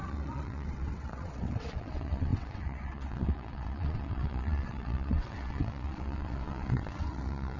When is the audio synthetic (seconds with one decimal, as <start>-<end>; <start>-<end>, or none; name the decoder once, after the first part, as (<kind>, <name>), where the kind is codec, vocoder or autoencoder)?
0.0-7.6 (vocoder, WaveNeXt)